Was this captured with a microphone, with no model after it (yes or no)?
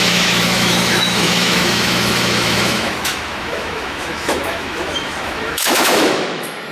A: no